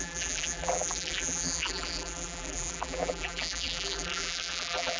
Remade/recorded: remade